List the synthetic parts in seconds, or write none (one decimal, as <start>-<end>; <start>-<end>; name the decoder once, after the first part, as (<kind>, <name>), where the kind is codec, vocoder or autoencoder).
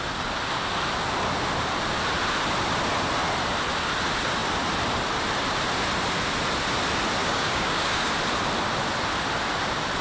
7.2-8.1 (codec, DAC)